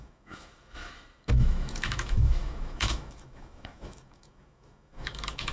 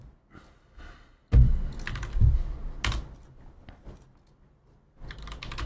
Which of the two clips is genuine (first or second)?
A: second